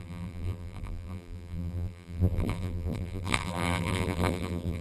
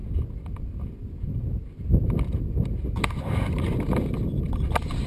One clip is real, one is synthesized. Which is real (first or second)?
second